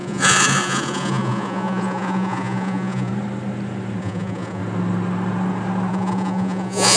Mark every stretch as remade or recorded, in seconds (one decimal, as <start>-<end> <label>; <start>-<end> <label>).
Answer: 0.0-3.1 remade; 3.1-4.0 recorded; 4.0-4.6 remade; 4.6-5.9 recorded; 5.9-7.0 remade